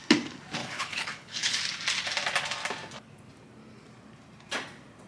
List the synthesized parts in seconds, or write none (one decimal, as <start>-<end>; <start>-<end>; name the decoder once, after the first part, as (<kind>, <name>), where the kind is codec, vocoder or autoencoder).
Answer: 0.6-1.6 (codec, HILCodec)